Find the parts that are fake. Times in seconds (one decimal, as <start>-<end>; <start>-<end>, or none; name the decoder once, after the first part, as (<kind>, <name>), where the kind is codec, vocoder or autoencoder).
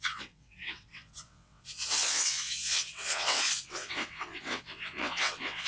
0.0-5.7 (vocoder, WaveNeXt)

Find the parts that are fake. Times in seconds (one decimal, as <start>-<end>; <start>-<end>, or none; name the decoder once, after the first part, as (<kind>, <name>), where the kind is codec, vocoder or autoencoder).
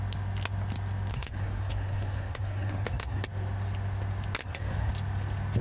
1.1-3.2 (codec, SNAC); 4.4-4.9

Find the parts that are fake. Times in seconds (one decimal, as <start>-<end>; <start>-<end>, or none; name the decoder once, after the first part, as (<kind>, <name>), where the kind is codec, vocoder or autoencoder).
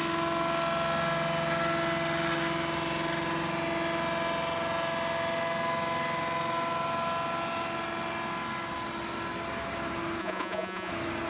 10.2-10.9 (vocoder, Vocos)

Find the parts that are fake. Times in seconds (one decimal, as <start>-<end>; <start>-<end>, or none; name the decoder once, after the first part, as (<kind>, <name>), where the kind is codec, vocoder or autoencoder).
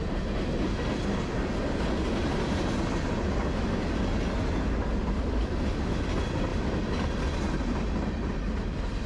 none